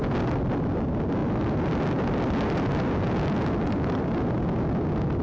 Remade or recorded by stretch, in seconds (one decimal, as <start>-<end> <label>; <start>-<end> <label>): 0.0-5.2 recorded